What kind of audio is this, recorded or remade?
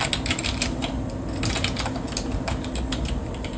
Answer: recorded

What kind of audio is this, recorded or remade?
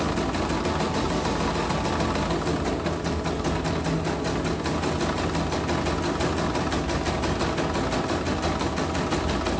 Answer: recorded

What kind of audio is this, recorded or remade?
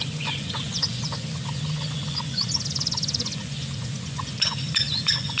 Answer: remade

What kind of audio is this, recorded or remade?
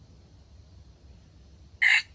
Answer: recorded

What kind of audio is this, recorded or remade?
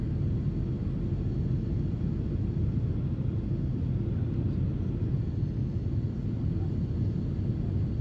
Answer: recorded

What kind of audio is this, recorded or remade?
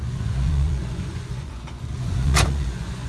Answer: remade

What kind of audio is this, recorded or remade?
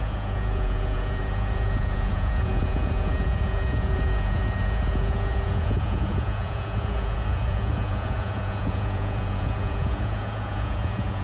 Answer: remade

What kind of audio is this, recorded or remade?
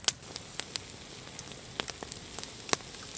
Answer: recorded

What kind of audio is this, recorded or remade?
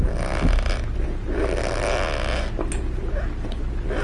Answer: recorded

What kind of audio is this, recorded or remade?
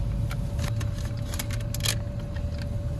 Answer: recorded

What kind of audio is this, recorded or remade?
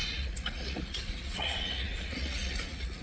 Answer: remade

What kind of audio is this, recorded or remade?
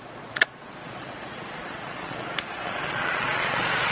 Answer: remade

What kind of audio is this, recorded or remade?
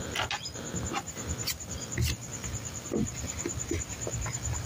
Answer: recorded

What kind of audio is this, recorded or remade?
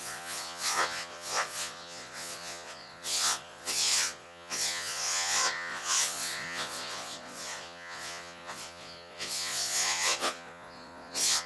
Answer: remade